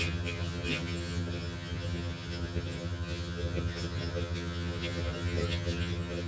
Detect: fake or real fake